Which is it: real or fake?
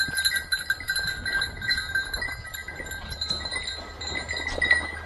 real